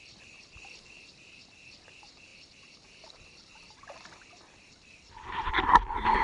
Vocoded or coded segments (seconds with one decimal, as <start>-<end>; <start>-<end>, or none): 2.3-5.5